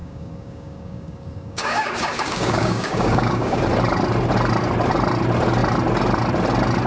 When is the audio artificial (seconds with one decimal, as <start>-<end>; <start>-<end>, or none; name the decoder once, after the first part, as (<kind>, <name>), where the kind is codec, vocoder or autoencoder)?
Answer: 0.0-3.6 (codec, DAC)